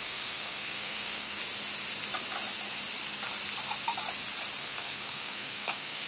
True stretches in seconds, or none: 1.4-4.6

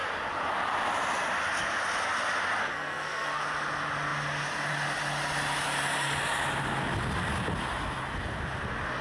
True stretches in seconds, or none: 0.0-2.6; 3.4-9.0

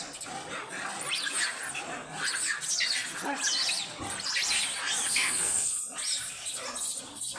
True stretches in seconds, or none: 0.0-5.1; 5.8-7.4

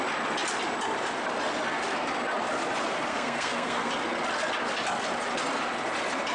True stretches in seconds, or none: 0.0-3.1; 3.9-6.3

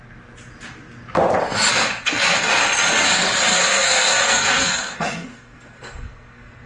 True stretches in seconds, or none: 0.0-1.7; 2.5-3.5

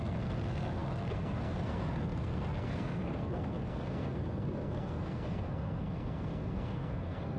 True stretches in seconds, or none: none

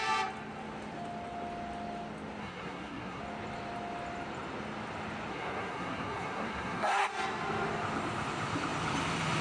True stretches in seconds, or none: 0.0-2.4; 3.2-5.3; 7.1-9.4